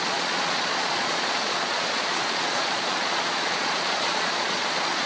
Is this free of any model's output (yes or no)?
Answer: no